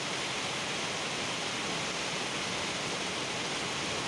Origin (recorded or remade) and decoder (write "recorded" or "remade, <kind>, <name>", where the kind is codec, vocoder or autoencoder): recorded